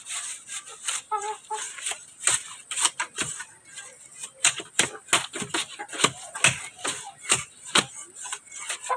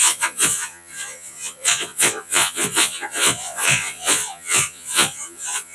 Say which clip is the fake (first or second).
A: second